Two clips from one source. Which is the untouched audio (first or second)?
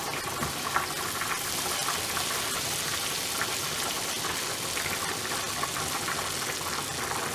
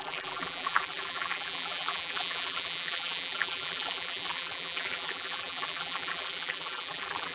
first